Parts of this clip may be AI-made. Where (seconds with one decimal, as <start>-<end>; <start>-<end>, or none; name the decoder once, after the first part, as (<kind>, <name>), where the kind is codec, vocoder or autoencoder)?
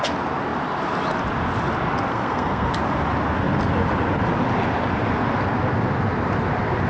2.1-2.7 (codec, SNAC)